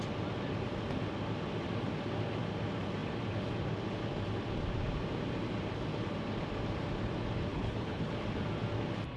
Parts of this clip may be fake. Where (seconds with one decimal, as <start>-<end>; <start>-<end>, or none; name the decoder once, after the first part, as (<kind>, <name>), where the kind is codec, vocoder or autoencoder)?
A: 7.5-8.1 (codec, HILCodec)